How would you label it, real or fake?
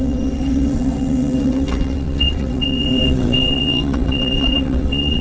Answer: fake